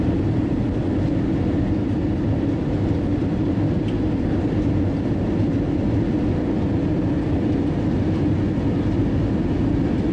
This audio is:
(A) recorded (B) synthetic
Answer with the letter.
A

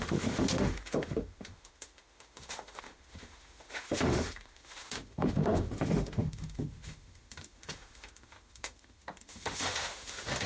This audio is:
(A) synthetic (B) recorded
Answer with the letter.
A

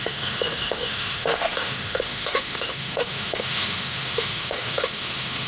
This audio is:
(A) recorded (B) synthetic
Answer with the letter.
B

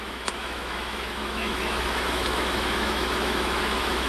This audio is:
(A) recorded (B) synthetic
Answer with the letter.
B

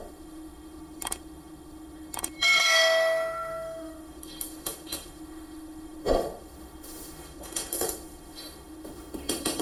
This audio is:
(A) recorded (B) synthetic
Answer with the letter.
B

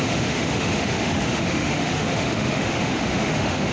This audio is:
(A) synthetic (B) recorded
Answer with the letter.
A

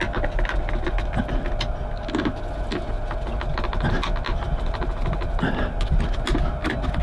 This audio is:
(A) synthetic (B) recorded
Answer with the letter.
B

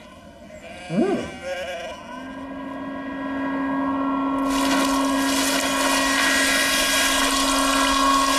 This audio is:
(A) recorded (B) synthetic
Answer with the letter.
A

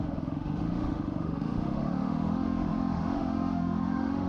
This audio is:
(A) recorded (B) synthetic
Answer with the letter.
B